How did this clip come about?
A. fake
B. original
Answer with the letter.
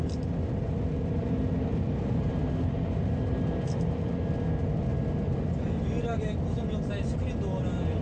B